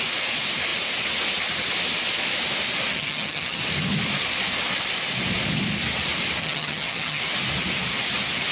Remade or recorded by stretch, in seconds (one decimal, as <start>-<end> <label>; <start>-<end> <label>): 0.0-2.9 recorded; 2.9-3.6 remade; 3.6-6.4 recorded; 6.4-7.2 remade; 7.2-8.5 recorded